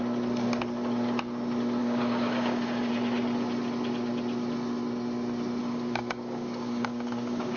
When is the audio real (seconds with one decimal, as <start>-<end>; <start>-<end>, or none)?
0.0-1.8; 2.9-5.6